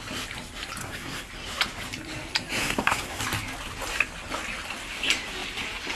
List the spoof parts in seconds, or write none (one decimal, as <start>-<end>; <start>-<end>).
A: 0.8-1.3; 2.6-3.2